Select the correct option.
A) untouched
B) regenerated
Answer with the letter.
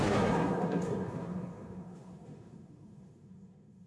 B